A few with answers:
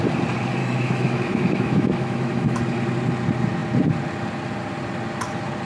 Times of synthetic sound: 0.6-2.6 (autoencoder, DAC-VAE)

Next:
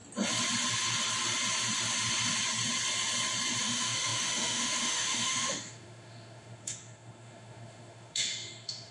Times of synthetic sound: 3.6-8.9 (autoencoder, DAC-VAE)